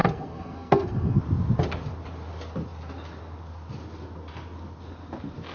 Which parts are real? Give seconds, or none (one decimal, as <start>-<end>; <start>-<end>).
1.2-5.5